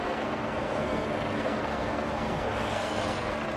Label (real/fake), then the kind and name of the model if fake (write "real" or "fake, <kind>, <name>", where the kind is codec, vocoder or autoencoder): fake, codec, SNAC